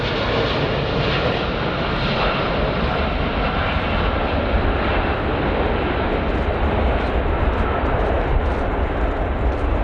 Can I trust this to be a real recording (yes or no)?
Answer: yes